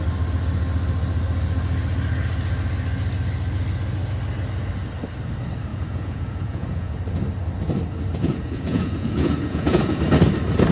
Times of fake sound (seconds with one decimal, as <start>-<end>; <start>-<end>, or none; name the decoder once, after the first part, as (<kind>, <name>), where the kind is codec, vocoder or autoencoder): 5.7-7.0 (vocoder, Vocos); 8.2-10.0